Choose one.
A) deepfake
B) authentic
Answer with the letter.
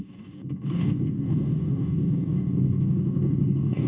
A